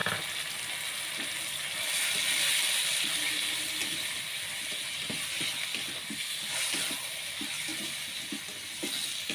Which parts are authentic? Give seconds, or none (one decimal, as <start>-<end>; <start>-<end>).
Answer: 0.0-9.3